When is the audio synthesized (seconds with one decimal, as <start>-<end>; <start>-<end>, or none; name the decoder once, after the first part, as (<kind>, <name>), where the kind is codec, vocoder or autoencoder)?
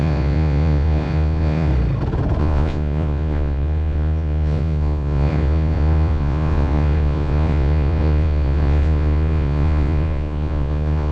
0.0-1.7 (vocoder, Vocos); 2.4-11.1